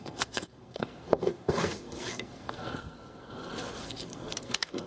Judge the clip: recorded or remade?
remade